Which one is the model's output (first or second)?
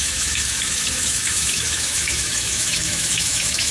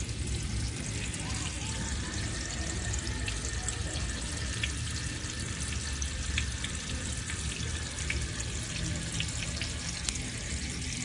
first